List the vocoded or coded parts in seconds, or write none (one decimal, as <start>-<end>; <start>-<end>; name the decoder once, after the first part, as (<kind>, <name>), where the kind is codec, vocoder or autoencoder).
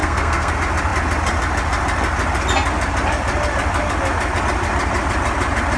0.0-0.5 (codec, SNAC)